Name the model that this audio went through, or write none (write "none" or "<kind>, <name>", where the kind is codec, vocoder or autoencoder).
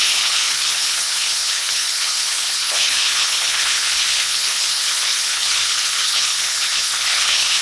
codec, HILCodec